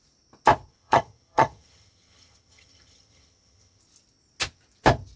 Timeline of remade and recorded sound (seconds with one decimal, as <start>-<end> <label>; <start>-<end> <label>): 0.0-0.7 recorded; 0.7-3.8 remade; 3.8-5.2 recorded